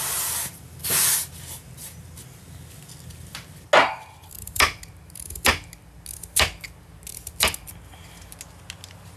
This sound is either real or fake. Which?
real